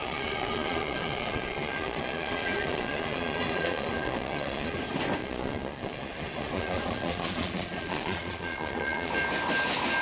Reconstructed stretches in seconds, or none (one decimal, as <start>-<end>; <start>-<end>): 0.0-4.8; 5.2-9.1